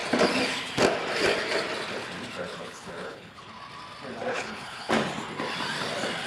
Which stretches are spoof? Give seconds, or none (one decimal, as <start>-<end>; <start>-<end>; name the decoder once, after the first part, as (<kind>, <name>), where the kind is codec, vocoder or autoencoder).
2.5-3.4 (codec, HILCodec); 4.3-4.9